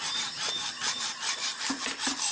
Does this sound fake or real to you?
real